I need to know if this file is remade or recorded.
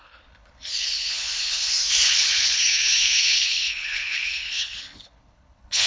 remade